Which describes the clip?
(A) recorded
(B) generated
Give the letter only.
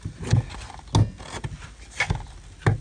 A